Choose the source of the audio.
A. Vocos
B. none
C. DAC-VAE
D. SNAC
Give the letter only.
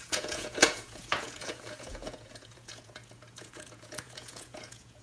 A